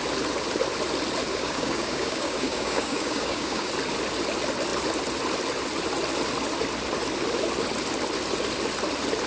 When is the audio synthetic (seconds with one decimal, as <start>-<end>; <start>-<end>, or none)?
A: 1.3-3.7